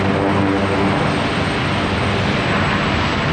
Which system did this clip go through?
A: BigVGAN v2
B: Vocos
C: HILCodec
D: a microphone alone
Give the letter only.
D